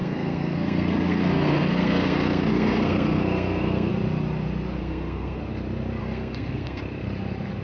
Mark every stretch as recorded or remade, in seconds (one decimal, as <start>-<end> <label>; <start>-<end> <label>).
0.0-3.9 remade; 3.9-4.8 recorded; 4.8-5.4 remade; 5.4-6.0 recorded; 6.0-6.8 remade; 6.8-7.6 recorded